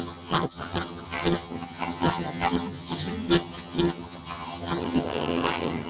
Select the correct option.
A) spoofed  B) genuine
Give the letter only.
A